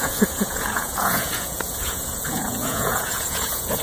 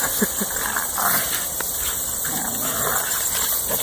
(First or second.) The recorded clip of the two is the second